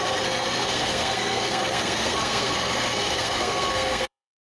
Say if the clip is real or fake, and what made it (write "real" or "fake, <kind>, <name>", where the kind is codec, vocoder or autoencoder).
fake, codec, SNAC